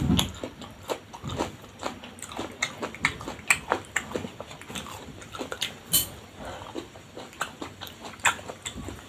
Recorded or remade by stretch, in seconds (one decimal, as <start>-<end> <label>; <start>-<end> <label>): 0.0-9.1 recorded